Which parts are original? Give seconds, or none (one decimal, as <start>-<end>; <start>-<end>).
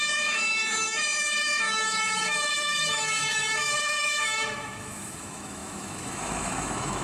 none